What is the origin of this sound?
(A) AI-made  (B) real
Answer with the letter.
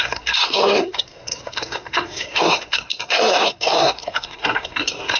A